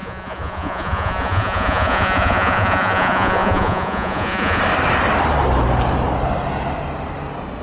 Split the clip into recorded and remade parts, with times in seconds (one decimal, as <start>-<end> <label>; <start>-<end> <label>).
0.0-4.6 remade; 4.6-7.6 recorded